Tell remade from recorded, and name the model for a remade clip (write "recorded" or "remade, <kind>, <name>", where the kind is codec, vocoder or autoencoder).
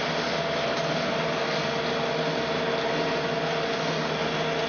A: recorded